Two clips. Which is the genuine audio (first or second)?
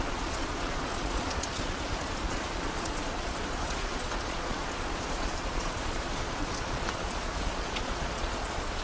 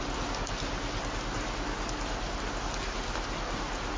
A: second